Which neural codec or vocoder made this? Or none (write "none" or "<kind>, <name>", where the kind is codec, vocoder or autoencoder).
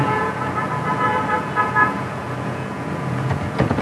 vocoder, Vocos